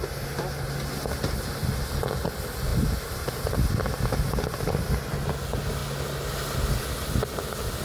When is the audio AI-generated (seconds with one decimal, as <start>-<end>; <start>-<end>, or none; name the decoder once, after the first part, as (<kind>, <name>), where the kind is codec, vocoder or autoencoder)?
none